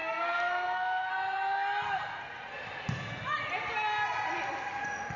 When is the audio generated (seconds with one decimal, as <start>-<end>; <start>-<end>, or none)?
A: 0.0-1.1